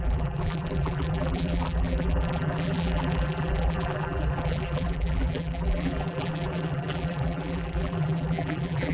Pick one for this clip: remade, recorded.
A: remade